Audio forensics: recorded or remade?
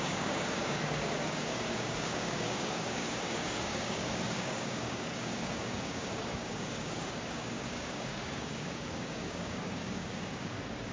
remade